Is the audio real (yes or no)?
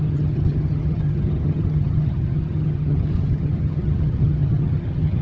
no